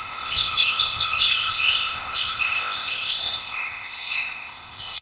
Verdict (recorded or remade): remade